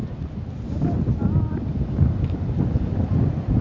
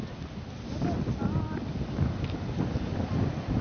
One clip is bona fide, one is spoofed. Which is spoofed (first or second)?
first